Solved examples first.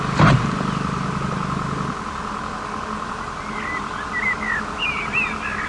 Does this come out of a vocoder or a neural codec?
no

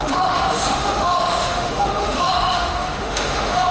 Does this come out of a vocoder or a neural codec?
yes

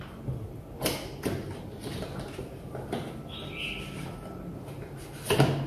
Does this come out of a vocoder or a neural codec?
no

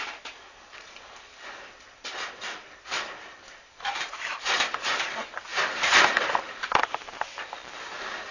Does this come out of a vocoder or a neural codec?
yes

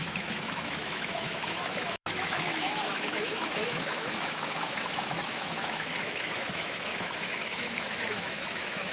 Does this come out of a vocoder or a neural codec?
yes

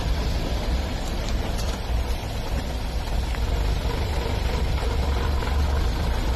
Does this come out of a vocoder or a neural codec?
yes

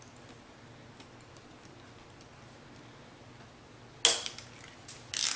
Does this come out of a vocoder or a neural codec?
no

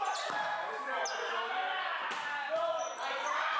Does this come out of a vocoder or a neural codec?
no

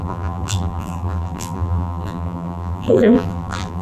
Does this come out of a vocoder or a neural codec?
yes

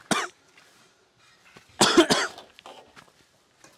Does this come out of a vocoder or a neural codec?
no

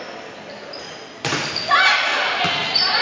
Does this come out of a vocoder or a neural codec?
no